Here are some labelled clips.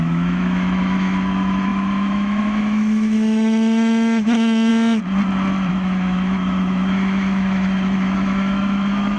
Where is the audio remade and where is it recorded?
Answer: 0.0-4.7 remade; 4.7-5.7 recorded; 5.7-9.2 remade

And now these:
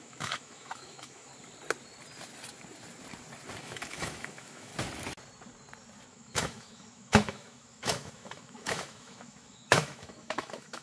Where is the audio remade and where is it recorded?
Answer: 0.0-1.3 remade; 1.3-3.6 recorded; 3.6-4.7 remade; 4.7-6.1 recorded; 6.1-10.8 remade

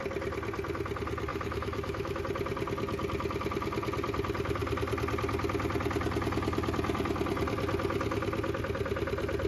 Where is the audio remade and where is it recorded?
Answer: 0.0-1.3 recorded; 1.3-2.2 remade; 2.2-9.5 recorded

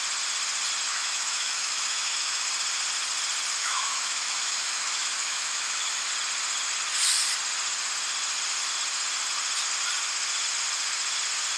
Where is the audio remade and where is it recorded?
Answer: 0.0-0.9 recorded; 0.9-2.4 remade; 2.4-3.6 recorded; 3.6-6.1 remade; 6.1-11.6 recorded

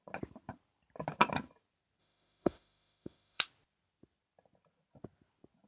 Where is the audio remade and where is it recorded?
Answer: 0.0-2.0 recorded; 2.0-3.4 remade; 3.4-5.7 recorded

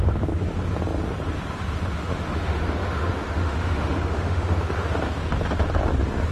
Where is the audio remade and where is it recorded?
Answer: 0.0-2.0 recorded; 2.0-4.9 remade; 4.9-6.3 recorded

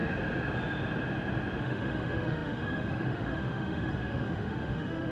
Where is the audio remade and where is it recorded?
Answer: 0.0-1.6 recorded; 1.6-5.1 remade